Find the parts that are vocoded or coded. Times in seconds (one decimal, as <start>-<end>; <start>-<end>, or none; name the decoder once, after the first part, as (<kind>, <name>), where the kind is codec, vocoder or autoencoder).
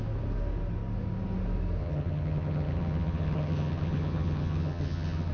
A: 1.8-5.3 (vocoder, HiFi-GAN)